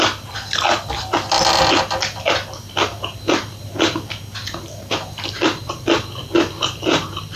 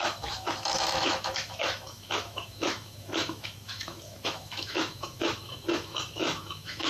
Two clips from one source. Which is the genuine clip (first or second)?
first